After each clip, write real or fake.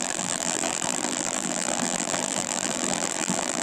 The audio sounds fake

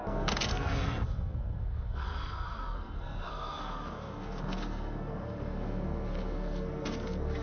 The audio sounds fake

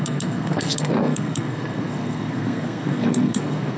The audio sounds fake